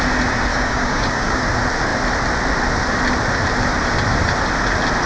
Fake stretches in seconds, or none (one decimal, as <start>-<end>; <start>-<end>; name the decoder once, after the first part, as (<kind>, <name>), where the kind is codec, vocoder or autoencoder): 0.5-1.4 (codec, DAC)